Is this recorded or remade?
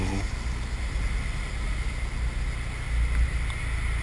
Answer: recorded